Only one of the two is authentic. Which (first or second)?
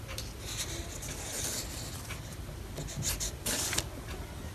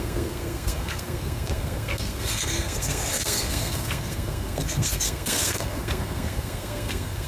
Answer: first